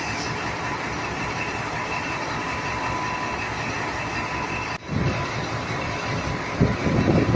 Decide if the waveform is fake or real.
real